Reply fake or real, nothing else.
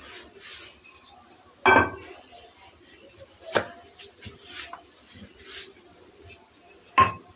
real